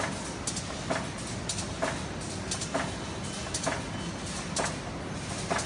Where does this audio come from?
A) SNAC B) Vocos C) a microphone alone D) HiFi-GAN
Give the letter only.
C